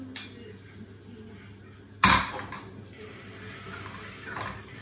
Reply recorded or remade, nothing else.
recorded